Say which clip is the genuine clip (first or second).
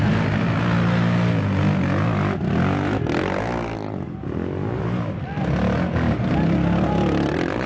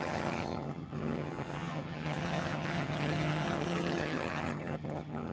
first